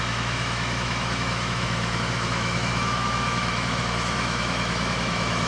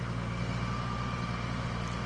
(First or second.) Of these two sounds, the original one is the second